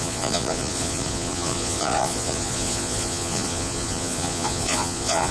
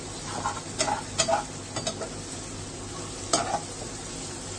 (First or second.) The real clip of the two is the second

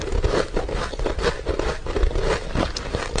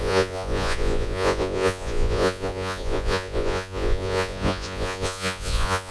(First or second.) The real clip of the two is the first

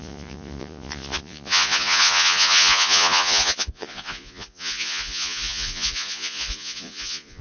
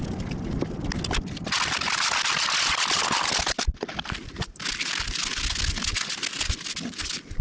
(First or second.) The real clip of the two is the second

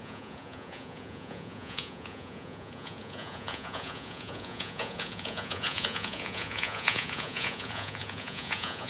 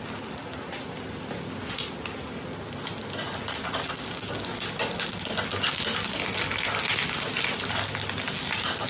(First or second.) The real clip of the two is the second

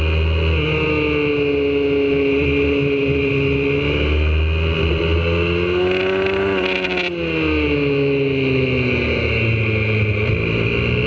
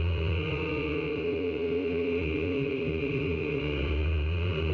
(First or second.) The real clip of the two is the first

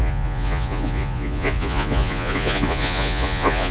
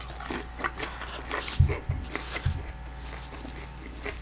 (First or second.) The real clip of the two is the second